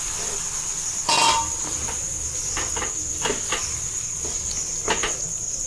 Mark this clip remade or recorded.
recorded